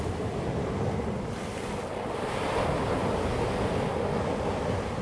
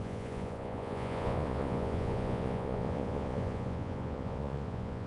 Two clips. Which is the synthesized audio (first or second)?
second